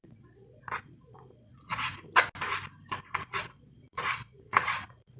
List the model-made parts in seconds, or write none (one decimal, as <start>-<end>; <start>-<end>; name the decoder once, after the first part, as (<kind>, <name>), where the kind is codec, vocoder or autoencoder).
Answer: 0.0-1.9 (vocoder, Vocos); 3.2-5.2